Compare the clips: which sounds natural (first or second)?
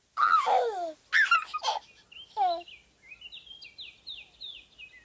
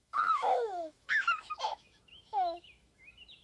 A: first